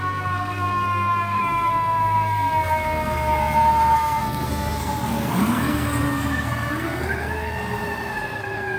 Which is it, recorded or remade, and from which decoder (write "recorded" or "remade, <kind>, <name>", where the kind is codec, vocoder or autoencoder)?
remade, codec, SNAC